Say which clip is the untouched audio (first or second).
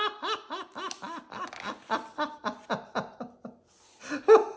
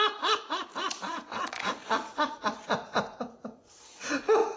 first